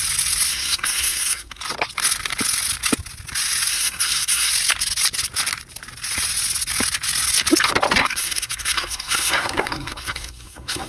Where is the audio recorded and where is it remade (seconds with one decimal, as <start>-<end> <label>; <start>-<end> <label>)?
0.0-0.5 recorded; 0.5-1.6 remade; 1.6-3.7 recorded; 3.7-4.5 remade; 4.5-8.0 recorded; 8.0-10.9 remade